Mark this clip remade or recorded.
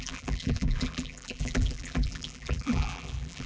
remade